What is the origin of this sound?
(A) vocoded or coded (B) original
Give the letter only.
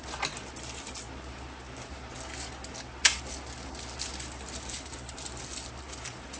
B